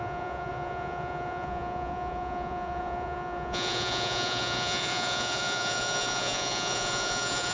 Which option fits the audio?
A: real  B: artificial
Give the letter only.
B